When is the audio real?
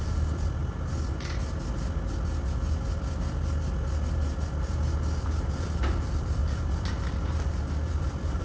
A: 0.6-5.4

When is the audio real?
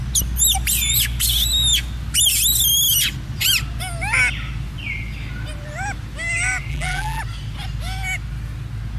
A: 0.0-6.7; 7.2-9.0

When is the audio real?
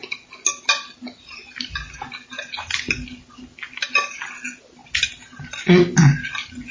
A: 0.0-6.7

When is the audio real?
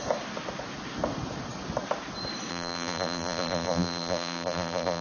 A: 0.0-2.5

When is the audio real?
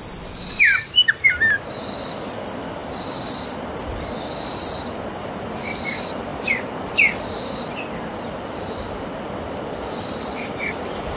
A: 0.0-11.2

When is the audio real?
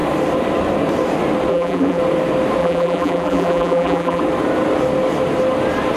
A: 0.0-1.5; 2.0-2.6; 4.2-6.0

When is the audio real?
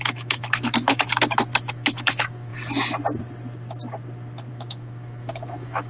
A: 2.5-4.5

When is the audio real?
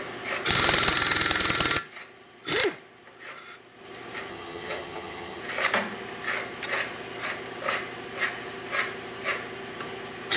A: 0.0-4.3; 5.4-10.4